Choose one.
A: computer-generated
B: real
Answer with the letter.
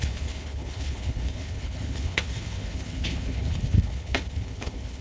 A